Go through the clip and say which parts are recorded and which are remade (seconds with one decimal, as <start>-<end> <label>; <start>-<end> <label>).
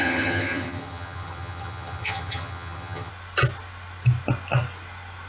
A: 0.0-3.1 remade; 3.1-5.3 recorded